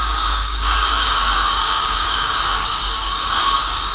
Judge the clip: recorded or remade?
remade